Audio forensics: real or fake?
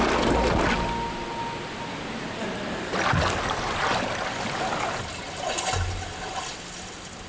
real